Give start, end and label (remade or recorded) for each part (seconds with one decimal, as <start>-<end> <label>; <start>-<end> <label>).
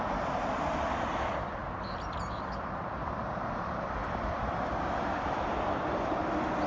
0.0-4.0 recorded; 4.0-6.1 remade; 6.1-6.7 recorded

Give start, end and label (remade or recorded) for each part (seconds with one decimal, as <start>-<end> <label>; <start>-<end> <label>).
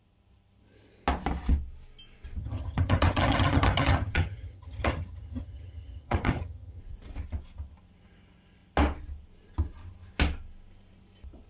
0.0-2.4 recorded; 2.4-6.8 remade; 6.8-11.5 recorded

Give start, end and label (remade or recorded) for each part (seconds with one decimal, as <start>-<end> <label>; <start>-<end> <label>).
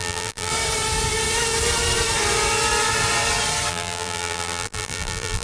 0.0-0.5 remade; 0.5-3.7 recorded; 3.7-5.4 remade